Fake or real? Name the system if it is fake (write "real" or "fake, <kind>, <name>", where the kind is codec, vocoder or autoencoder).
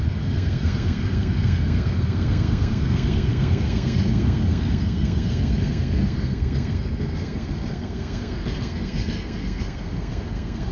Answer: fake, codec, SNAC